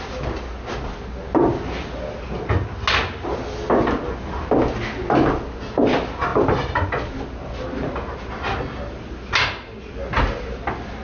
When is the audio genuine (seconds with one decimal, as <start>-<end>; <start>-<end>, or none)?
0.0-11.0